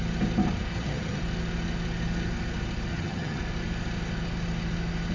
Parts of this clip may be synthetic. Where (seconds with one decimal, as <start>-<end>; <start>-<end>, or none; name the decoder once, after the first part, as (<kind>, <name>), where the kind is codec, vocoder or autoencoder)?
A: 0.7-1.2 (vocoder, HiFi-GAN); 2.9-3.4